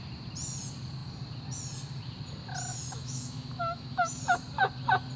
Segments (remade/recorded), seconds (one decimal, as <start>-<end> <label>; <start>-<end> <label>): 0.0-2.7 recorded; 2.7-4.2 remade; 4.2-5.2 recorded